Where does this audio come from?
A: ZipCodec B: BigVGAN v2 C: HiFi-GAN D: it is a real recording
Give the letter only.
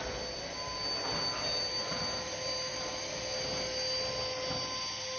D